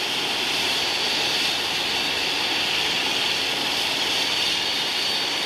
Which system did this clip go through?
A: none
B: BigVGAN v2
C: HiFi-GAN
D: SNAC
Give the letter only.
A